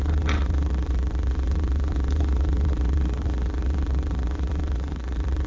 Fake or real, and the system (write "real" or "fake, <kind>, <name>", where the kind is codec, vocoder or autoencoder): fake, vocoder, WaveNeXt